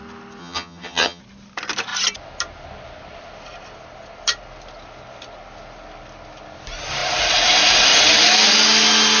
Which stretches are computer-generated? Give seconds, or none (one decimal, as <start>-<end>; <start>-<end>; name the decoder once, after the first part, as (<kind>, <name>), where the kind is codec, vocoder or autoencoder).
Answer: 0.4-1.2 (vocoder, HiFi-GAN)